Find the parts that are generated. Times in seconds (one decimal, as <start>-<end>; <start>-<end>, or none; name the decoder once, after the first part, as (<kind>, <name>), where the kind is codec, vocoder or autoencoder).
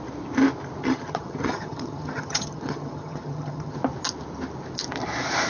0.8-3.8 (vocoder, HiFi-GAN)